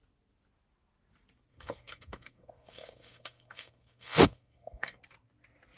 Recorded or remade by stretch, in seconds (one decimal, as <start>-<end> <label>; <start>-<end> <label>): 0.0-1.5 recorded; 1.5-5.0 remade; 5.0-5.8 recorded

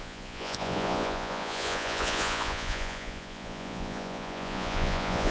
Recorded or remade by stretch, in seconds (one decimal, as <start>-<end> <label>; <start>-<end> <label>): 0.0-5.3 remade

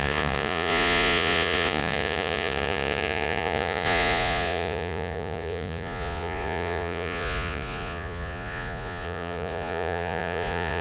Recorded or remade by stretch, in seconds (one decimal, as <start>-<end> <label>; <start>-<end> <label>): 0.0-10.8 remade

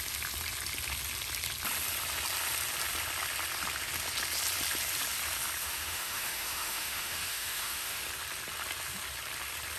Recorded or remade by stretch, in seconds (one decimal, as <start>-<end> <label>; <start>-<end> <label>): 0.0-5.6 recorded; 5.6-8.0 remade; 8.0-9.8 recorded

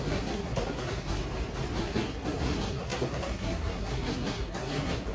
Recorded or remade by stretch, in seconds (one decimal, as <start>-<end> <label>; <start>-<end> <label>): 0.0-1.2 remade; 1.2-1.8 recorded; 1.8-5.1 remade

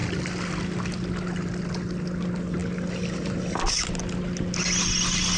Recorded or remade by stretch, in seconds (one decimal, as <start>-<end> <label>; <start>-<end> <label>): 0.0-5.4 recorded

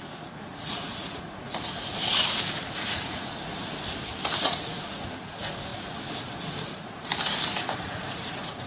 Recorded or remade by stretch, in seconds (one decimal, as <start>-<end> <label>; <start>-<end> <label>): 0.0-3.5 remade; 3.5-4.4 recorded; 4.4-7.1 remade; 7.1-7.8 recorded; 7.8-8.7 remade

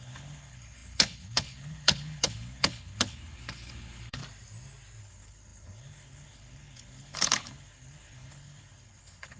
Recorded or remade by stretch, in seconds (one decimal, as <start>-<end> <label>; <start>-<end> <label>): 0.0-4.2 remade; 4.2-5.0 recorded; 5.0-9.4 remade